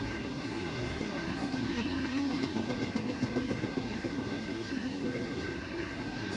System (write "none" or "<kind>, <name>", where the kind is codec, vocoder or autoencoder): codec, SNAC